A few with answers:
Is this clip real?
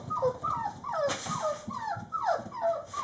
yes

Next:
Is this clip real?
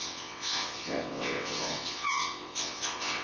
no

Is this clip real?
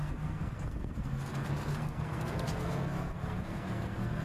no